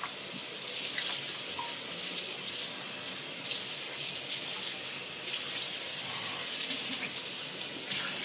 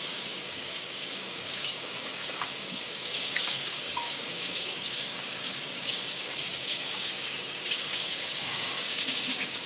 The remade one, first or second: second